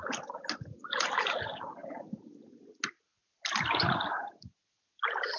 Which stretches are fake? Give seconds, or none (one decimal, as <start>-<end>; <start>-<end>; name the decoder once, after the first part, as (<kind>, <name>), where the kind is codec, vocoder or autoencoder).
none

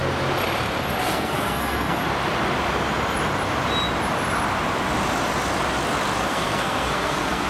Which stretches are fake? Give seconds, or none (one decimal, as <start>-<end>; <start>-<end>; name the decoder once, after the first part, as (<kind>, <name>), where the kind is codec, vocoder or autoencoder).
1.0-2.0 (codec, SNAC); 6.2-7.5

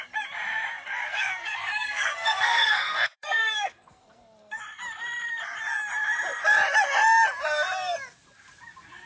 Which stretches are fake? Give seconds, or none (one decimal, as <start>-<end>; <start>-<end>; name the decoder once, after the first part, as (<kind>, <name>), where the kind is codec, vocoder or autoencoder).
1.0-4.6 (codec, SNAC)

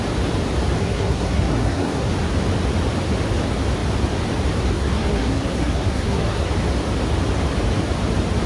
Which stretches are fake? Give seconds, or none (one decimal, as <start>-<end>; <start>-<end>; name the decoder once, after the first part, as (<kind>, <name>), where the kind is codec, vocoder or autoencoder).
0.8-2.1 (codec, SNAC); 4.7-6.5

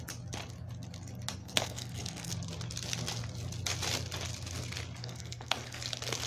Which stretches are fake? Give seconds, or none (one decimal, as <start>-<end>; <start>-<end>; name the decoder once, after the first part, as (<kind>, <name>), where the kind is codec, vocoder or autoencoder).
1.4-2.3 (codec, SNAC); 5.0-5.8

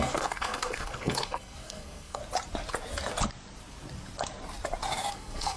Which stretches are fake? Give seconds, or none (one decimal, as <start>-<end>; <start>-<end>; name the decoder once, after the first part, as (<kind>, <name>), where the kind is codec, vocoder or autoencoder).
0.0-2.2 (codec, SNAC); 5.1-5.6

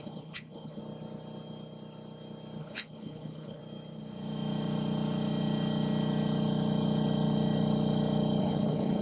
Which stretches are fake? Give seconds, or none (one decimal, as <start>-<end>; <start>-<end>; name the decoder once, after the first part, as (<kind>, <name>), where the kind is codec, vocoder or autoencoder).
0.0-0.8 (codec, HILCodec); 2.6-3.6; 8.4-9.0

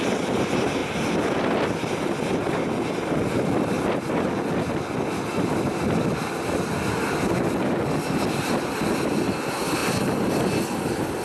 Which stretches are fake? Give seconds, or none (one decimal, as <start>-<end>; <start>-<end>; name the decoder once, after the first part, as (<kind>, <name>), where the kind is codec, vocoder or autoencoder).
0.8-4.4 (vocoder, BigVGAN v2); 9.8-10.6